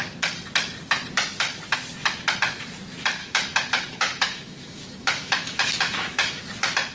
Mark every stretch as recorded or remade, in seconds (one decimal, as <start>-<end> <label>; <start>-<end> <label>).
0.0-3.2 recorded; 3.2-6.4 remade; 6.4-6.9 recorded